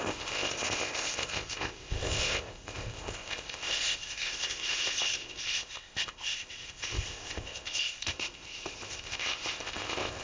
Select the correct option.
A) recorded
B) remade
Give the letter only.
B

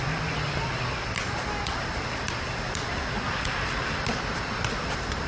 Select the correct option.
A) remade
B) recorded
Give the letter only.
A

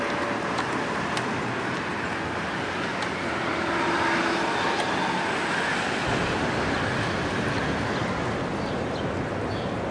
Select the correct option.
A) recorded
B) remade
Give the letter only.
A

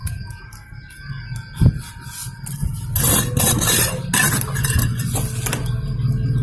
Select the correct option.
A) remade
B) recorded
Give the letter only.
B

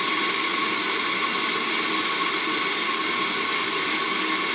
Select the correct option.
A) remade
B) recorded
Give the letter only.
B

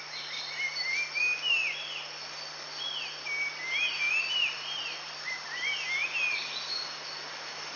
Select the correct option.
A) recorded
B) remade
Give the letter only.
A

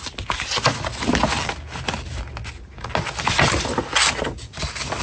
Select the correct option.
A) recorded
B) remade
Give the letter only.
A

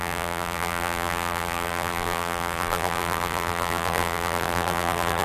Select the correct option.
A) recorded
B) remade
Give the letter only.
B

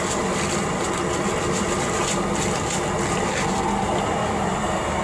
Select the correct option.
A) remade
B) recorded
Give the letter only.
B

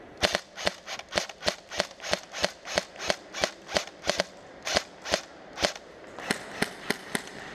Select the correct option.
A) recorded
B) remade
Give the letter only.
A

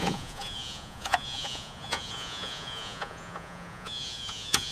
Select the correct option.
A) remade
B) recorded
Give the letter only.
A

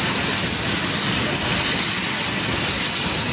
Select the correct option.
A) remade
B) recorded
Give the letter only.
B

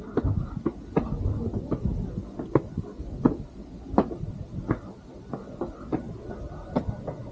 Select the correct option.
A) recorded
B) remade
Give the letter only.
A